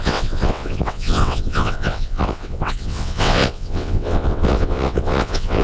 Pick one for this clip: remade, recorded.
remade